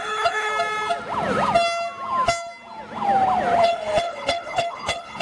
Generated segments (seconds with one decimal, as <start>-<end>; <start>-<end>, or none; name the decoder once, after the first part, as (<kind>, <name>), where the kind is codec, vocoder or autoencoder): 0.0-0.5 (codec, HILCodec); 3.6-5.2